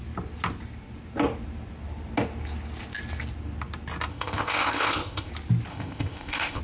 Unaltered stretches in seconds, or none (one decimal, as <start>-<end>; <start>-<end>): 0.0-4.1; 5.3-5.7